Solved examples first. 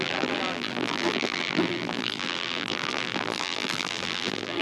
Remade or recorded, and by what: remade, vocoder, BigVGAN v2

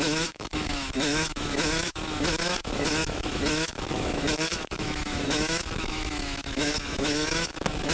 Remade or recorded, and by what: remade, autoencoder, DAC-VAE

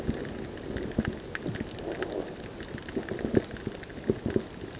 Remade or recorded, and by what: recorded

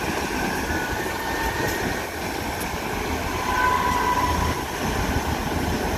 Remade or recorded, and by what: recorded